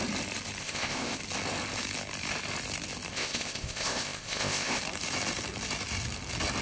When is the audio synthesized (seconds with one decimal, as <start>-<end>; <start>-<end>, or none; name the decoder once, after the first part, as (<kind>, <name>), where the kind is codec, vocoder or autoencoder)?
0.6-1.2 (codec, ZipCodec); 3.1-4.8